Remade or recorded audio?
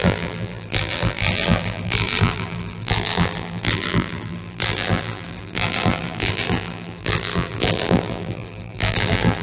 remade